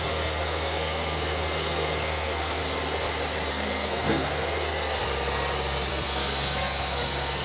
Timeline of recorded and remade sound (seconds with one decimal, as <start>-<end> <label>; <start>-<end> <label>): 0.0-2.6 remade; 2.6-3.5 recorded; 3.5-5.0 remade; 5.0-5.9 recorded; 5.9-7.4 remade